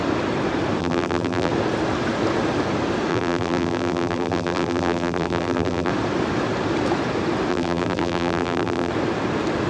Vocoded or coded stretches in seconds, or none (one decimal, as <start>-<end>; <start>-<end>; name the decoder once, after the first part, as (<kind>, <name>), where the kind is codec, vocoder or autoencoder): 0.8-1.5 (vocoder, BigVGAN v2); 3.1-5.9; 7.5-8.9